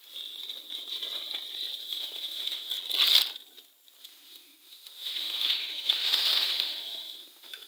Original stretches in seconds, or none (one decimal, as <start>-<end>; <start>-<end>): 0.0-1.8; 2.7-4.0